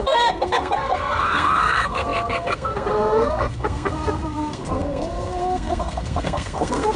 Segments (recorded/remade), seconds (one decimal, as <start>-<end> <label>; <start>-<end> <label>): 0.0-7.0 remade